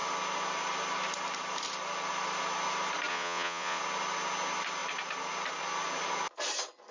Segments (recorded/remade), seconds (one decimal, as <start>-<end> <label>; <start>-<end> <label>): 0.0-3.1 recorded; 3.1-3.8 remade; 3.8-6.9 recorded